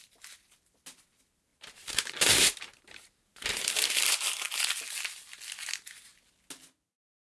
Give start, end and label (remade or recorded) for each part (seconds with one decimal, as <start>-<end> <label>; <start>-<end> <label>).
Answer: 0.0-1.5 recorded; 1.5-3.7 remade; 3.7-7.2 recorded